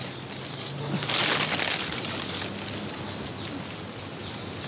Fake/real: real